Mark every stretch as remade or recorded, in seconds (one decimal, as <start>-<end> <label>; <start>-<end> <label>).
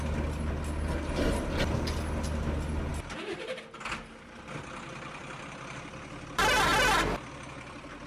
0.0-8.1 recorded